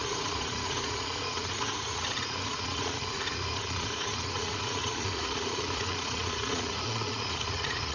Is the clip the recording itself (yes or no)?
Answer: no